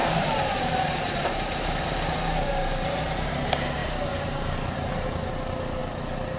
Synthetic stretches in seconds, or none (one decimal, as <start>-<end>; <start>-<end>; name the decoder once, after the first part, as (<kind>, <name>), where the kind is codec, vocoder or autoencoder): 0.0-3.4 (vocoder, BigVGAN v2); 3.8-5.2